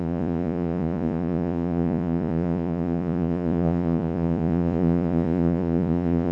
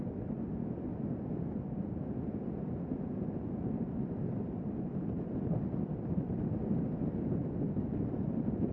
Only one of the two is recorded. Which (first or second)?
second